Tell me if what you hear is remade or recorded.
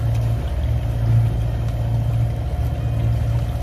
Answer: recorded